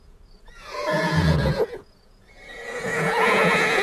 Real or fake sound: fake